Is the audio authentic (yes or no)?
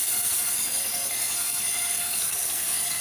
no